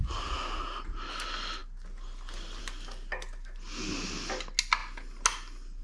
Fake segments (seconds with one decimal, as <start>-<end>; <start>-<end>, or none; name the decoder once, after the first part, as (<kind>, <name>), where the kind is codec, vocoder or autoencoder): none